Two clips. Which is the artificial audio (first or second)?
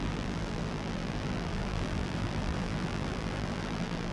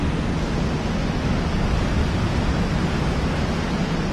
first